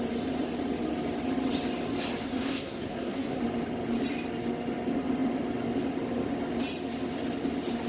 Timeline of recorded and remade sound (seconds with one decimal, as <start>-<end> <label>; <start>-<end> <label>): 0.0-2.2 recorded; 2.2-3.4 remade; 3.4-7.9 recorded